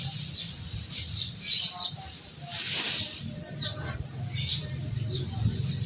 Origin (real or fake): real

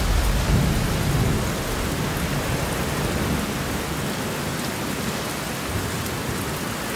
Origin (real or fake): real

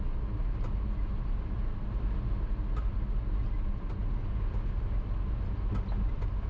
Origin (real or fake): real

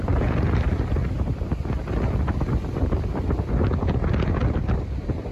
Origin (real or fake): real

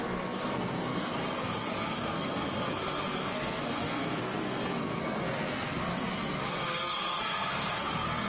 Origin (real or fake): fake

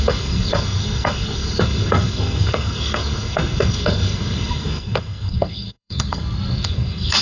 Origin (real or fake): fake